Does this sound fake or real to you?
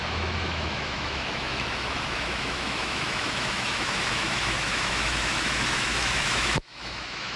fake